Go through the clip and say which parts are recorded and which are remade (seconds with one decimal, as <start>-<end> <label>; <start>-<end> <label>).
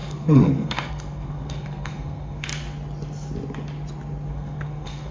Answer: 0.0-2.5 remade; 2.5-4.3 recorded; 4.3-5.1 remade